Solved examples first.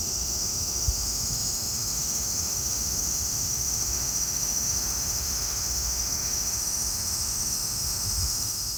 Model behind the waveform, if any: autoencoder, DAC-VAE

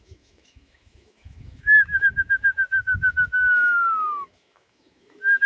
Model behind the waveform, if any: autoencoder, DAC-VAE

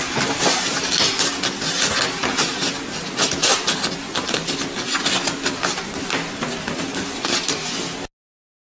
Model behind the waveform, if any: none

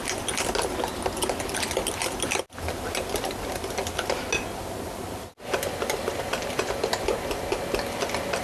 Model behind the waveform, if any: none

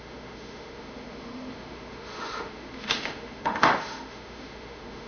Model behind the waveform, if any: autoencoder, DAC-VAE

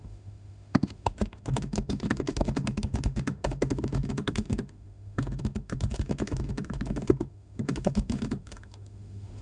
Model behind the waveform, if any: autoencoder, DAC-VAE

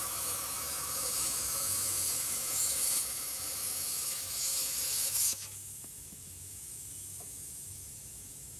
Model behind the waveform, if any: autoencoder, DAC-VAE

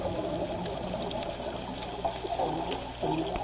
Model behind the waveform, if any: none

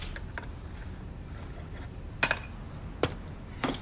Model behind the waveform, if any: none